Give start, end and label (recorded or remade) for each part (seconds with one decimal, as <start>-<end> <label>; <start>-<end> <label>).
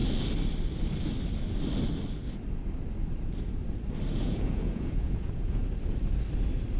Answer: 0.0-4.1 recorded; 4.1-5.6 remade; 5.6-6.8 recorded